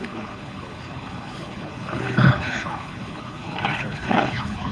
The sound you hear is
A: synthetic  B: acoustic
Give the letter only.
A